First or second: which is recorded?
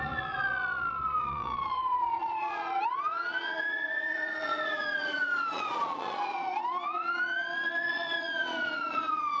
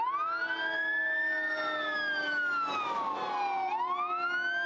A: second